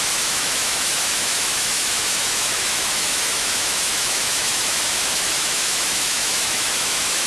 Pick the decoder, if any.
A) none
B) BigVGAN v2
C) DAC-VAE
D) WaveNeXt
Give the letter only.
C